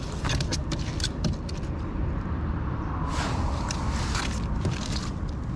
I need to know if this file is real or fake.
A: real